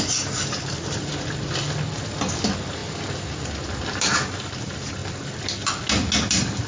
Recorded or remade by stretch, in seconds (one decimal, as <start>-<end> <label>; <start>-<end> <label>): 0.0-6.7 recorded

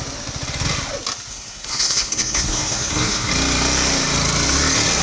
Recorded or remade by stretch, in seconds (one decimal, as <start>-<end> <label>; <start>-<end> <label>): 0.0-1.3 recorded; 1.3-3.3 remade; 3.3-5.0 recorded

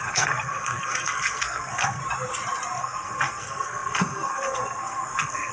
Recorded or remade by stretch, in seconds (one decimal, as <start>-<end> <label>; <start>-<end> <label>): 0.0-2.0 remade; 2.0-2.8 recorded; 2.8-5.5 remade

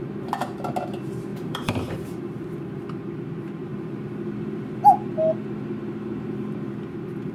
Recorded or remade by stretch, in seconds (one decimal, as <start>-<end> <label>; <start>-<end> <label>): 0.0-1.3 recorded; 1.3-2.2 remade; 2.2-7.3 recorded

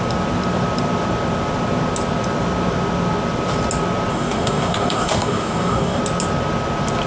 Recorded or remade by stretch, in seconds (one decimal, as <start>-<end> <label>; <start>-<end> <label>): 0.0-4.1 recorded; 4.1-6.0 remade; 6.0-7.1 recorded